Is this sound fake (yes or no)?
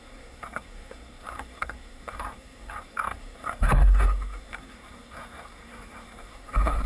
yes